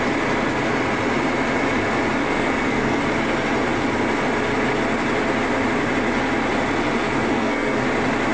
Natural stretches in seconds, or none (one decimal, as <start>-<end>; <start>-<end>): 0.0-2.2; 3.0-7.3; 7.8-8.3